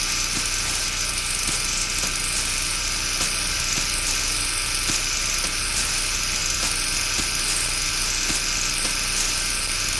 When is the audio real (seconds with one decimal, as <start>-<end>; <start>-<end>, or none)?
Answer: 0.0-10.0